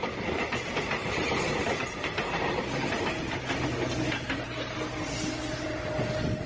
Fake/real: real